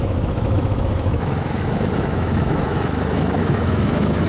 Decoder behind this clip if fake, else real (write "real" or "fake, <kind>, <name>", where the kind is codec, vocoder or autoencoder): fake, autoencoder, DAC-VAE